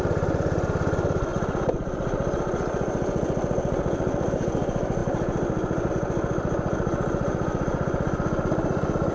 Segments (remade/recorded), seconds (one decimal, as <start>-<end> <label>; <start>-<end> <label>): 0.0-9.1 recorded